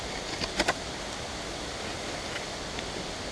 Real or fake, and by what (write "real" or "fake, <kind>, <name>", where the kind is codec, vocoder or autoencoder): real